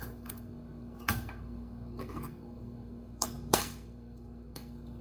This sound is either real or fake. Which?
fake